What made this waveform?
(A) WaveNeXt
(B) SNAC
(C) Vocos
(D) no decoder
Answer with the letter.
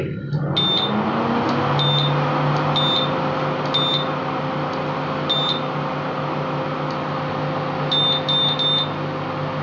D